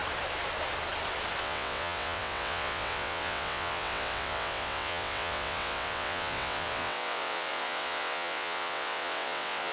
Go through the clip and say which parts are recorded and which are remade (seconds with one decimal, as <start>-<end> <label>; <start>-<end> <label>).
0.0-1.4 recorded; 1.4-9.7 remade